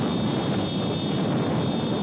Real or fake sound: fake